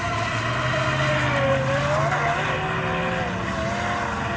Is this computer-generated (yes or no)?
no